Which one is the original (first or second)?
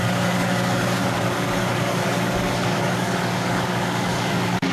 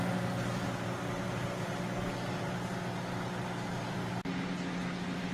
second